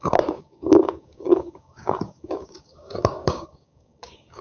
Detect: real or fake fake